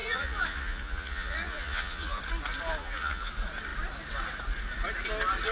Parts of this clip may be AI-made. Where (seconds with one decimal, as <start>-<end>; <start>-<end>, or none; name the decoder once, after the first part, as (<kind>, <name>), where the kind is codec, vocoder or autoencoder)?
0.0-2.2 (vocoder, Vocos); 2.8-3.3